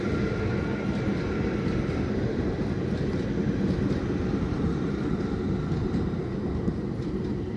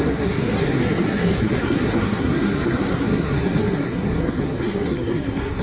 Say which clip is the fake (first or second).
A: second